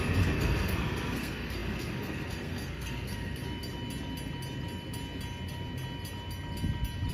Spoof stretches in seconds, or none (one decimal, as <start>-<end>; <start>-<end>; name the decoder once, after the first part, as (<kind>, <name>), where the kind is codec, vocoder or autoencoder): 0.0-3.4 (codec, SNAC)